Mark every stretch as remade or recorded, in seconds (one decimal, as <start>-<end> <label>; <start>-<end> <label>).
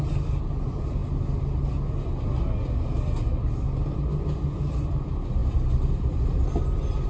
0.0-1.0 remade; 1.0-3.9 recorded; 3.9-7.1 remade